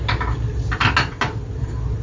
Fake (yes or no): no